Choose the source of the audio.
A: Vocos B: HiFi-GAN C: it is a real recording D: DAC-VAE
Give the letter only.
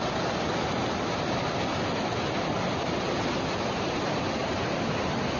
C